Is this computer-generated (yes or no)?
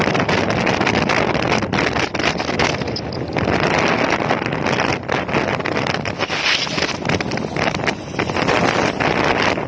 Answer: no